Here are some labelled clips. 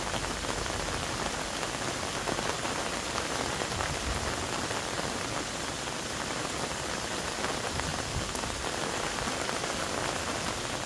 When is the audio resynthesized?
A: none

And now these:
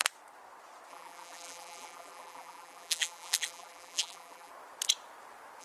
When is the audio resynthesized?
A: 0.9-4.5 (vocoder, BigVGAN v2)

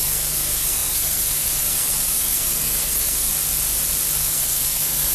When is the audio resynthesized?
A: 0.0-3.3 (codec, SNAC); 4.2-5.1